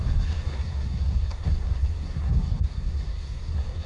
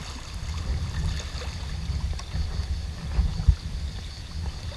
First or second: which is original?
second